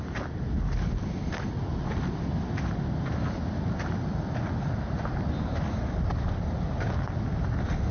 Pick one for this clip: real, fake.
real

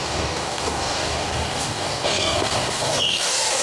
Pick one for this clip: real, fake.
fake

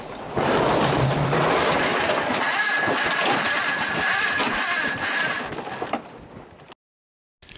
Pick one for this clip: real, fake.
real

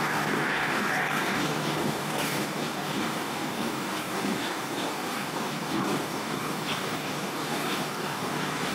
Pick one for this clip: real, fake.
fake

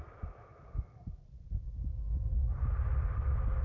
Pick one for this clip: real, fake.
real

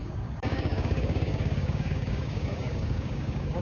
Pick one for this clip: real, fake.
fake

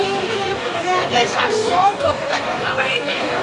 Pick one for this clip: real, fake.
fake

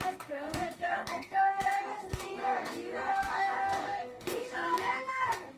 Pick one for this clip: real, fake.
fake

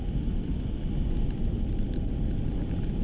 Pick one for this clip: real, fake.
real